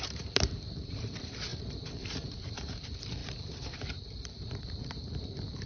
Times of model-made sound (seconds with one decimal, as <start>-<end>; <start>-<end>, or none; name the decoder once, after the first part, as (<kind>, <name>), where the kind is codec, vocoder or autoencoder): 0.0-5.7 (vocoder, BigVGAN v2)